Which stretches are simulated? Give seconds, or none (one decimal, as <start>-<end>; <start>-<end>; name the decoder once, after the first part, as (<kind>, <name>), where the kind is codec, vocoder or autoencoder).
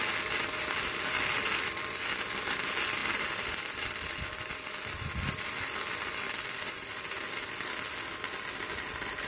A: none